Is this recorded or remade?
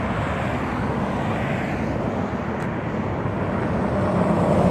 recorded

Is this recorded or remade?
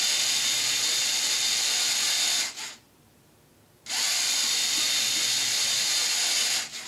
recorded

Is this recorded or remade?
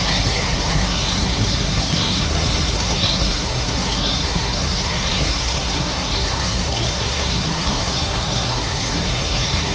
remade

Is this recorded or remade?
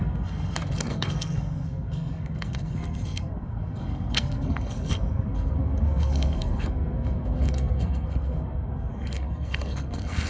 remade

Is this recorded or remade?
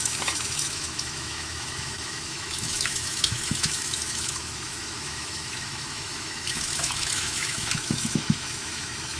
remade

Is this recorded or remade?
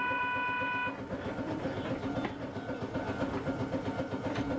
recorded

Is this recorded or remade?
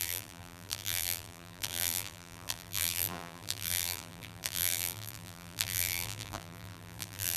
remade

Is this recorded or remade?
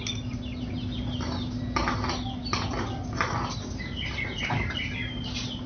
recorded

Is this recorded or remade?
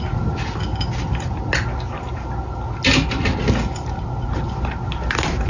recorded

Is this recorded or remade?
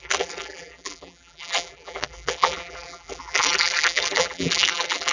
remade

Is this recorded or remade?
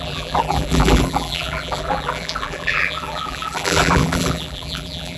remade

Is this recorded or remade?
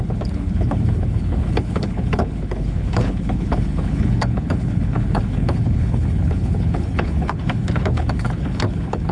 remade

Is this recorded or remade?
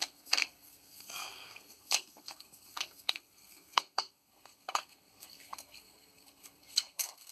remade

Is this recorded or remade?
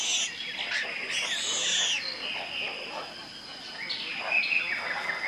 recorded